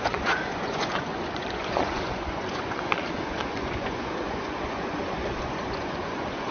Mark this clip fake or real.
fake